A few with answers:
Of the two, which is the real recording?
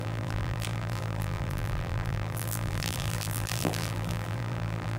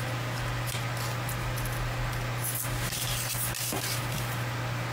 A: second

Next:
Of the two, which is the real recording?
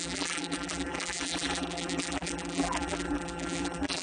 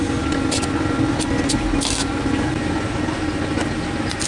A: second